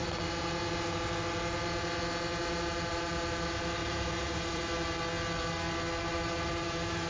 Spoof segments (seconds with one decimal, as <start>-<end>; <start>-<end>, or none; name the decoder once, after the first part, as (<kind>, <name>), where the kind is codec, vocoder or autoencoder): 3.8-4.6 (vocoder, BigVGAN v2)